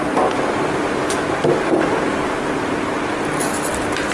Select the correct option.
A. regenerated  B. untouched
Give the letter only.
B